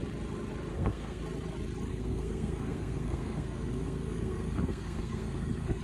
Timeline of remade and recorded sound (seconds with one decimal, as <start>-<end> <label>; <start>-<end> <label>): 0.0-0.7 recorded; 0.7-1.2 remade; 1.2-1.9 recorded; 1.9-5.8 remade